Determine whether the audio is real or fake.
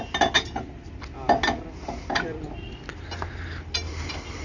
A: real